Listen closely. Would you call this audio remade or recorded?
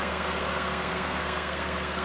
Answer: remade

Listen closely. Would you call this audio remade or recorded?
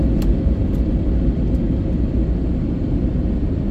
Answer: recorded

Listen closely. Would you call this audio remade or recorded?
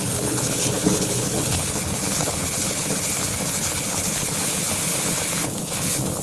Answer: remade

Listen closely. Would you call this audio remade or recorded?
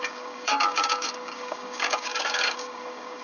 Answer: remade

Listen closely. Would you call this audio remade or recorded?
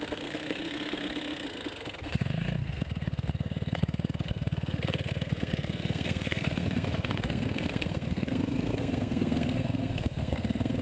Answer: remade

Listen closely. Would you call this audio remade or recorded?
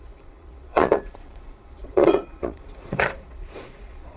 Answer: remade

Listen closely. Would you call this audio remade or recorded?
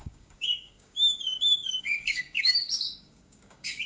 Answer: remade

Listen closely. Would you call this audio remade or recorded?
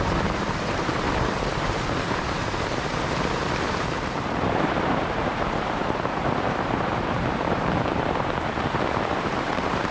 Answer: remade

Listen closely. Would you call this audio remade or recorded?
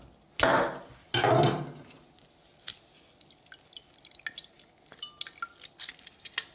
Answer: recorded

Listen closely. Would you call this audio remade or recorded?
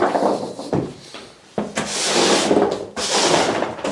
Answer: recorded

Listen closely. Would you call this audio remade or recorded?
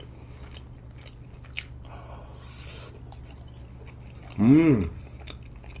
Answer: recorded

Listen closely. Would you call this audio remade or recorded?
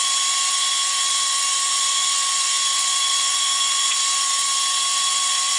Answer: remade